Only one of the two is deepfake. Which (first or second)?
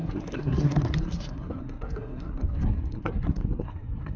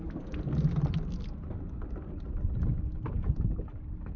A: first